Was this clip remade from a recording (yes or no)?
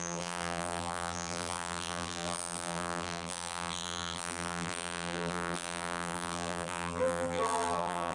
yes